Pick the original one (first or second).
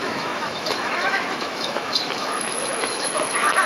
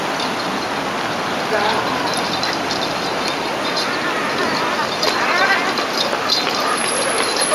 second